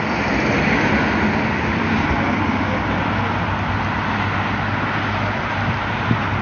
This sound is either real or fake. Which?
real